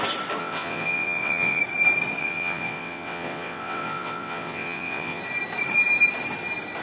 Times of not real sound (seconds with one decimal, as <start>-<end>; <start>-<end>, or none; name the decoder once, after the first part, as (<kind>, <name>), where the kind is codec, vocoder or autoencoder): 0.4-1.6 (vocoder, WaveNeXt); 2.2-5.2